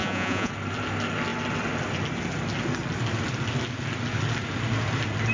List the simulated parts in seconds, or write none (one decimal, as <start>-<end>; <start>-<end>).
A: 0.0-0.5